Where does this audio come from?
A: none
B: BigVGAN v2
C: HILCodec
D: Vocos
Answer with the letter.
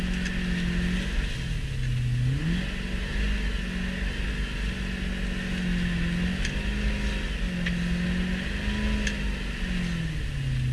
A